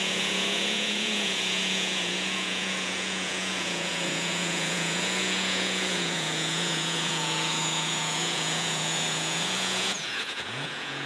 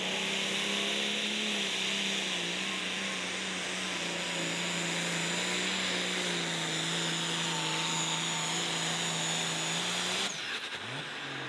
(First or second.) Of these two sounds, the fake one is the first